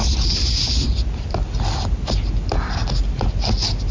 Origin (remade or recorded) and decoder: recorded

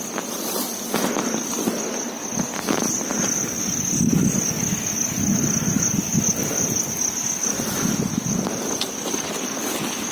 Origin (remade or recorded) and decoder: recorded